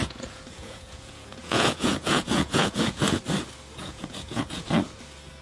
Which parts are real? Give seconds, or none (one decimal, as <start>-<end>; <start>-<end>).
3.2-3.8; 4.7-5.4